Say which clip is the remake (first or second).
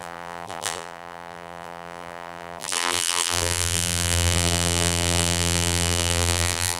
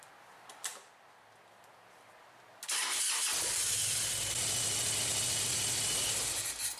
first